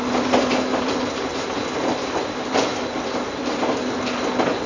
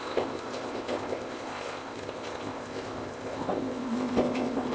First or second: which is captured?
first